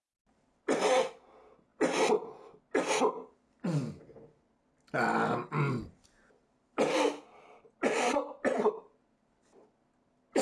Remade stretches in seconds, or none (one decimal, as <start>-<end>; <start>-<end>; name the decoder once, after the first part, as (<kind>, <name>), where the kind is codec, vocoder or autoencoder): none